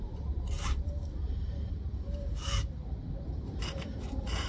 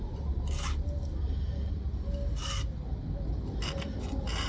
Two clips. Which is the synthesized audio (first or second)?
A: first